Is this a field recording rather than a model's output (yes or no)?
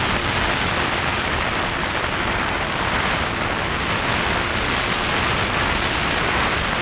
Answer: yes